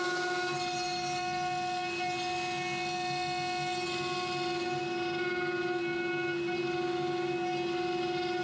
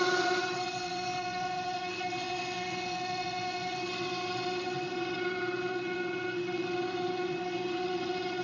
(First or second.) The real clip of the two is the first